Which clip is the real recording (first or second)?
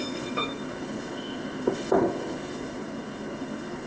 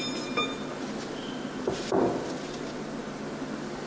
second